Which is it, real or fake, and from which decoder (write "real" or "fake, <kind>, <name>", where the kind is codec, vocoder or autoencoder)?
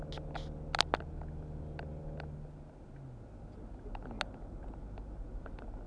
real